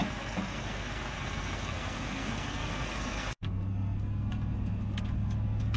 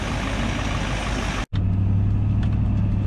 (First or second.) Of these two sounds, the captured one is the second